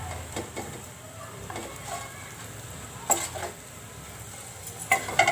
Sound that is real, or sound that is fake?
real